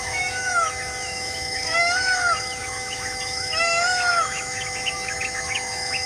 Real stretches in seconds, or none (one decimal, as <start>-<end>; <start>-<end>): none